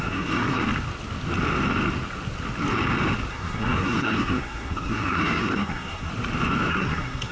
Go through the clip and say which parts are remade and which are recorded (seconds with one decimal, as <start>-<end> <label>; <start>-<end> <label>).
0.0-0.6 remade; 0.6-3.3 recorded; 3.3-6.1 remade; 6.1-6.7 recorded; 6.7-7.3 remade